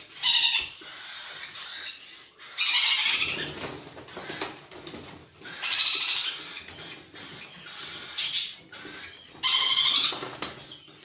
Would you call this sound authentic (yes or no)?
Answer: yes